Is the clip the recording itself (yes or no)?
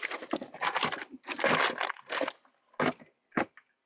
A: yes